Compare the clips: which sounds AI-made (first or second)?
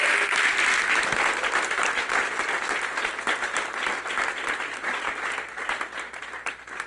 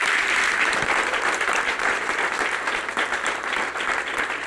second